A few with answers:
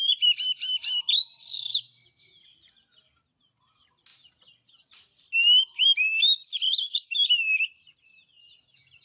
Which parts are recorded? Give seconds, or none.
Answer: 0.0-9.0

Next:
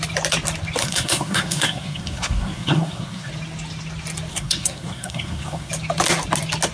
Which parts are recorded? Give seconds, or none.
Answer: 0.0-0.8; 3.3-4.3; 5.7-6.7

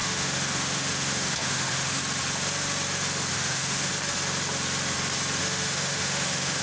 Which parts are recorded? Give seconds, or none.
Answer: 2.0-3.3; 3.9-5.4

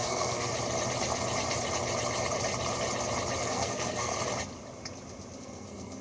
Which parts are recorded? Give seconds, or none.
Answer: 0.5-3.4; 4.1-5.4

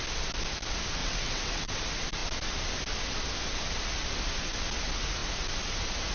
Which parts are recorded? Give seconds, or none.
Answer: 0.0-1.0; 1.8-6.1

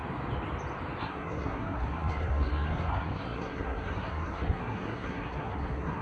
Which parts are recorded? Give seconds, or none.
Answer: 0.0-1.0

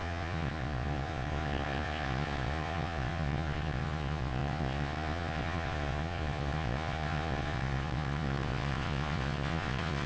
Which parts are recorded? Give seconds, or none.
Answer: none